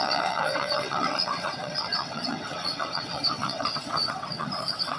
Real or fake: fake